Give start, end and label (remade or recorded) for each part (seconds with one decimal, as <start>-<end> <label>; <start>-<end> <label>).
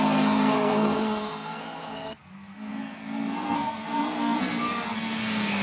0.0-5.6 remade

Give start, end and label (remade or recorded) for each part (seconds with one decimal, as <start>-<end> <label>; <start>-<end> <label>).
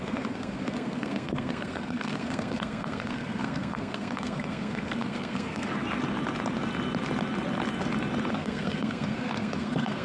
0.0-5.7 remade; 5.7-8.3 recorded; 8.3-10.0 remade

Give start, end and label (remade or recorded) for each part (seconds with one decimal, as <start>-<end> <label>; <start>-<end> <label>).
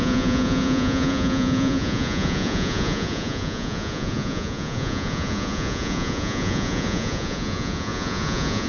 0.0-8.7 remade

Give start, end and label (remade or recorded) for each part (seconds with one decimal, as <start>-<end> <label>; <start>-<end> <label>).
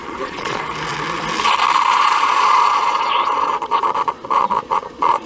0.0-0.6 remade; 0.6-1.9 recorded; 1.9-5.3 remade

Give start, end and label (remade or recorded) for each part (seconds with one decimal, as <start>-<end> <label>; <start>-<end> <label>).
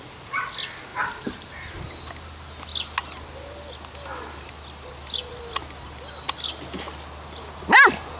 0.0-0.9 recorded; 0.9-1.7 remade; 1.7-8.2 recorded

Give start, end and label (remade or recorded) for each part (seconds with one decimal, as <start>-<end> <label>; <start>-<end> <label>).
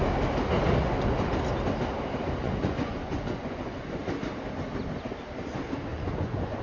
0.0-0.8 recorded; 0.8-1.3 remade; 1.3-2.4 recorded; 2.4-4.0 remade; 4.0-5.9 recorded; 5.9-6.6 remade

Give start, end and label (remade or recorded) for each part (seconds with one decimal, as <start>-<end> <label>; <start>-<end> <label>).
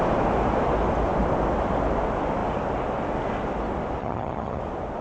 0.0-4.0 recorded; 4.0-4.6 remade; 4.6-5.0 recorded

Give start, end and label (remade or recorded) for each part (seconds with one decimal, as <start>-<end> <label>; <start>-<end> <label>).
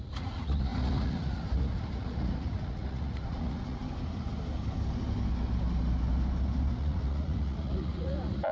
0.0-3.8 remade; 3.8-6.8 recorded; 6.8-8.5 remade